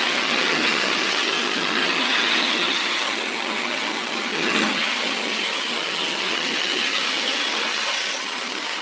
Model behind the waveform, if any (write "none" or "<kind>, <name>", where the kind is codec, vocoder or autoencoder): vocoder, HiFi-GAN